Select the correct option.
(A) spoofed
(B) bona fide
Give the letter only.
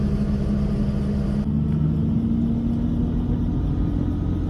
B